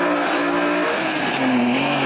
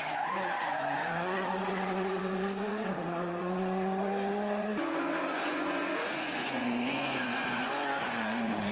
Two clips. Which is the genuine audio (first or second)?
first